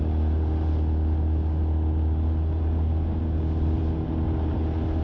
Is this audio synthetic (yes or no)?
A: no